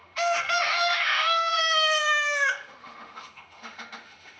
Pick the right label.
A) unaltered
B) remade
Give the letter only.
B